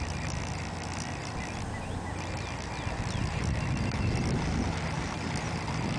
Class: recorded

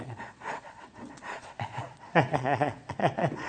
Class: remade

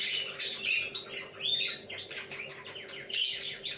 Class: recorded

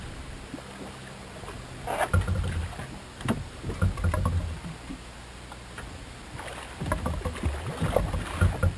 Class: recorded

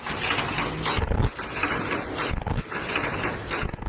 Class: recorded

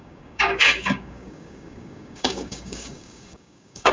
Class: remade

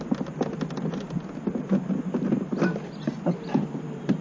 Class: recorded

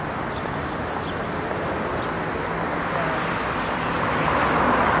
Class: recorded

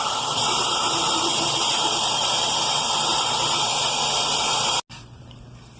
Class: recorded